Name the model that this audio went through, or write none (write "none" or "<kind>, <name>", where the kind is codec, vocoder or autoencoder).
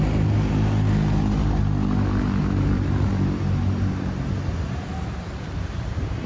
none